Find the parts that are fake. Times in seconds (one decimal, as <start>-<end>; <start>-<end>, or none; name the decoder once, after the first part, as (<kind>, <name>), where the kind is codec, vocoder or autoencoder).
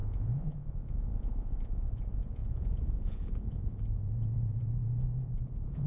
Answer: 0.0-5.9 (vocoder, Vocos)